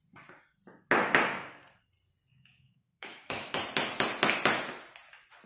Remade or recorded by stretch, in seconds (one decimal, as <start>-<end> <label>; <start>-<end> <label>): 0.0-2.3 recorded; 2.3-3.6 remade; 3.6-5.5 recorded